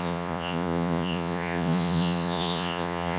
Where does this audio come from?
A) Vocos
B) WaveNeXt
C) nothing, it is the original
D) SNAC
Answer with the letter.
A